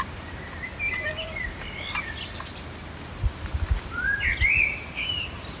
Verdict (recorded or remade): remade